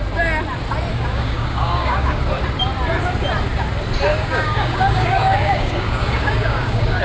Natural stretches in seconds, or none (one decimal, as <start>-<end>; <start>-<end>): 0.0-0.9; 2.2-4.1